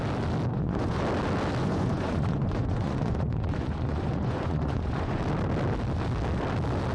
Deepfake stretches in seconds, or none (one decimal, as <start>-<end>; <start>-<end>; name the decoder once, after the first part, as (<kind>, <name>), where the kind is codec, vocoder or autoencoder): 0.5-1.0 (vocoder, Vocos); 1.6-5.2